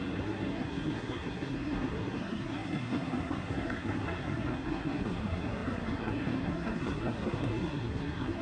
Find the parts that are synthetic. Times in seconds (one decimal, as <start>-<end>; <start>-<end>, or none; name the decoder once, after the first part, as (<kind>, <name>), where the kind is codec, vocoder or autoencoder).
0.0-8.4 (codec, SNAC)